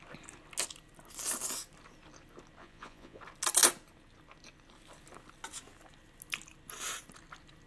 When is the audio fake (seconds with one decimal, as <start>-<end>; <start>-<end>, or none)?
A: 2.6-3.2